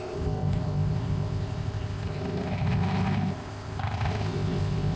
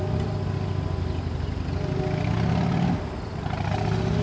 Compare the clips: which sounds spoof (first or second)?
first